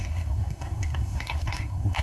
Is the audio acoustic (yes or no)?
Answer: no